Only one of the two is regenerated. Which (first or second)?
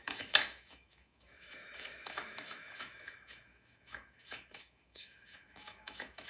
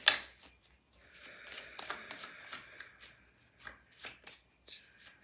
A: first